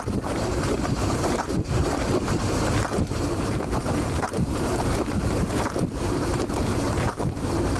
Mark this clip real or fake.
fake